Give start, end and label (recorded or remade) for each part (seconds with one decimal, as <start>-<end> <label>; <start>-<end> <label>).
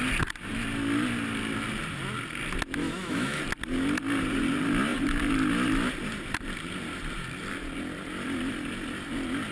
0.0-2.8 recorded; 2.8-3.4 remade; 3.4-9.5 recorded